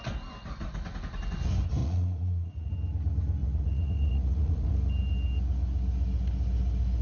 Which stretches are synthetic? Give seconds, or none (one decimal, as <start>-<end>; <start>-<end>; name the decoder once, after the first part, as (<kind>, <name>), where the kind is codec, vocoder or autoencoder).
1.8-2.7 (vocoder, Vocos); 3.4-4.7